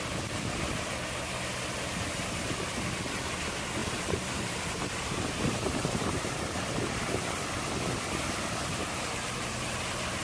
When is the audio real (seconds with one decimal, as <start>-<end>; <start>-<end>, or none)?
0.0-3.8; 7.0-10.2